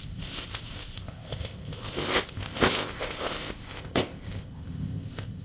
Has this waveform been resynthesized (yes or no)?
yes